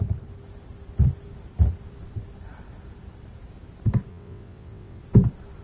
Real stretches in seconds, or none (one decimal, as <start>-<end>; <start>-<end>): 0.0-4.1; 5.0-5.6